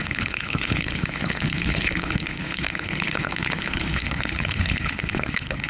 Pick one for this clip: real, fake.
fake